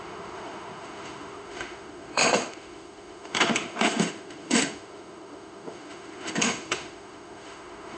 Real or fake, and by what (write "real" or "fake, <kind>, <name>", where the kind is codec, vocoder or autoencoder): fake, autoencoder, DAC-VAE